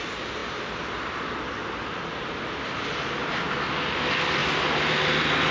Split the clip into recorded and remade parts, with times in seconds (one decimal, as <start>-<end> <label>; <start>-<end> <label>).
0.0-5.5 recorded